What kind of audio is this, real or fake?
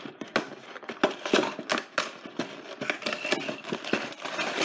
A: real